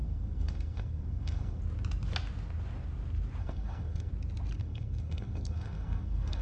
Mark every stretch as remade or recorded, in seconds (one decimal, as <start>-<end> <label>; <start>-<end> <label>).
0.0-1.6 remade; 1.6-3.4 recorded; 3.4-4.1 remade; 4.1-4.6 recorded; 4.6-6.4 remade